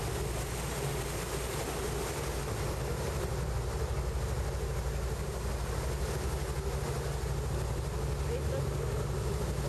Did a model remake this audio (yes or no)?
no